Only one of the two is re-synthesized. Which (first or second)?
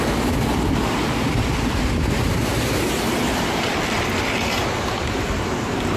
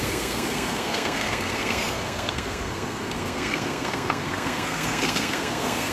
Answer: second